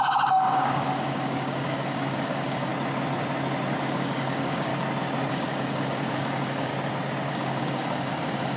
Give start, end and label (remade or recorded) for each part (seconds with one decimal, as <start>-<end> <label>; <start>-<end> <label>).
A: 0.0-2.7 remade; 2.7-3.8 recorded; 3.8-4.7 remade; 4.7-5.3 recorded; 5.3-6.7 remade; 6.7-7.3 recorded; 7.3-8.6 remade